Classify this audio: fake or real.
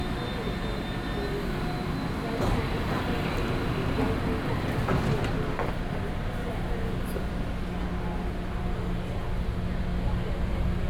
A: real